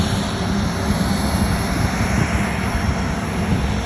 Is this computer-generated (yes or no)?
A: no